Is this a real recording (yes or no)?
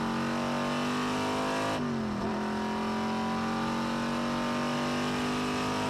yes